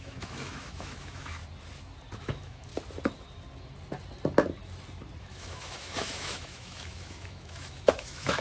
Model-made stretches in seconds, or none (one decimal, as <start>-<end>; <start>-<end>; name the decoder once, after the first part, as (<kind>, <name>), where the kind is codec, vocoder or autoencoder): 0.0-1.4 (autoencoder, DAC-VAE); 2.2-2.7; 5.2-8.4